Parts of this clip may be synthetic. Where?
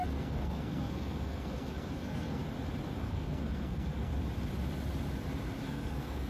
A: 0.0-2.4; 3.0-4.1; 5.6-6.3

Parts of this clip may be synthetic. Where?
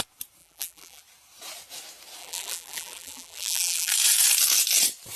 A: 0.4-1.0; 2.2-3.9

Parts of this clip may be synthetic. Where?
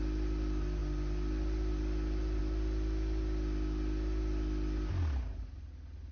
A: none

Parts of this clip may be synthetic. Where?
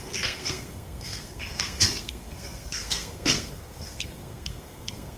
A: 0.0-5.2